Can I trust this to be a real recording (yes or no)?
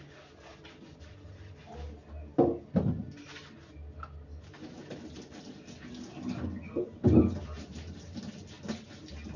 yes